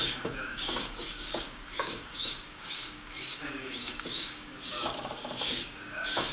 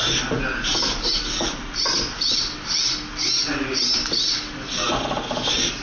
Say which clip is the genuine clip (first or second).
second